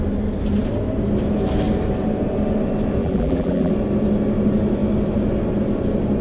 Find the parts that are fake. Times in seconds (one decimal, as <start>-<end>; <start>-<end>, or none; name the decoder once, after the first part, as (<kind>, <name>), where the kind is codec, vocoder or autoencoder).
3.0-3.7 (vocoder, BigVGAN v2)